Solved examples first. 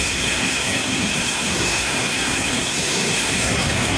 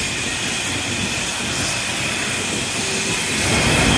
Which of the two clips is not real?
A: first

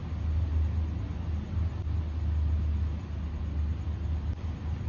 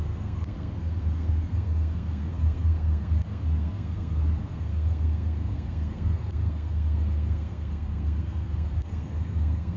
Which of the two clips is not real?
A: second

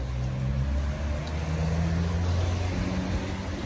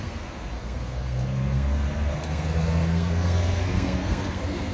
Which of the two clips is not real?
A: second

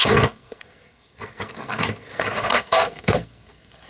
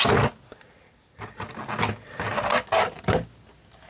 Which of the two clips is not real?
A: first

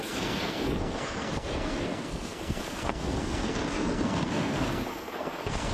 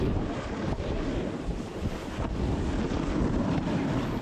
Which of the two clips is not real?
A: first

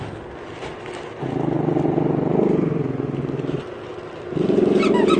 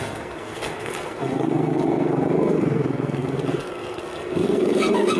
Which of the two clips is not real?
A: second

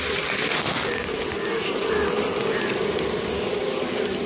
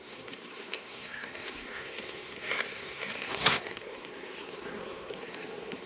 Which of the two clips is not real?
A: second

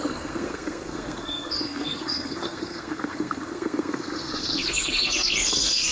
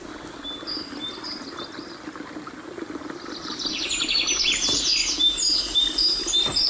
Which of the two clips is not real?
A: first